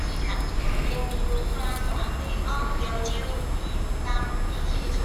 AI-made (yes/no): no